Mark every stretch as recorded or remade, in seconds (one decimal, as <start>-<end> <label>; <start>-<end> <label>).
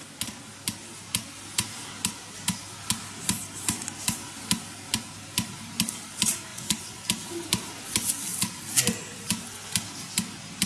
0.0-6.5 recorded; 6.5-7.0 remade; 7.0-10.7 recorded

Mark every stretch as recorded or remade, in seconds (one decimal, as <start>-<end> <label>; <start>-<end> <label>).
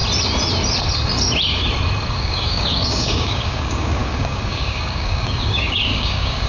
0.0-2.1 recorded; 2.1-6.5 remade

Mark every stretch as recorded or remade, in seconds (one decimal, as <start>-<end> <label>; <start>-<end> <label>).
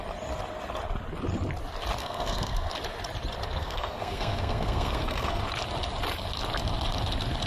0.0-2.0 recorded; 2.0-2.7 remade; 2.7-3.6 recorded; 3.6-5.4 remade; 5.4-7.5 recorded